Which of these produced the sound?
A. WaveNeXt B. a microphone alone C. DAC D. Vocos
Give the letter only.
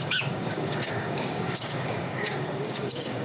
C